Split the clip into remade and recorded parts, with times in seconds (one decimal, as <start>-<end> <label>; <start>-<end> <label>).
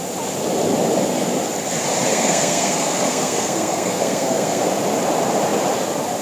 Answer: 0.0-2.1 recorded; 2.1-4.6 remade; 4.6-6.2 recorded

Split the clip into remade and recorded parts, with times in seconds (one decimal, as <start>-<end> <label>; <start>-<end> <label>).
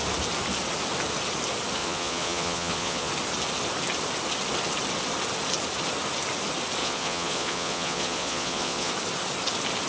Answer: 0.0-1.8 recorded; 1.8-3.1 remade; 3.1-6.8 recorded; 6.8-8.9 remade; 8.9-9.9 recorded